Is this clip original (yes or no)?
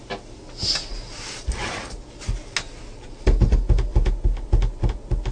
yes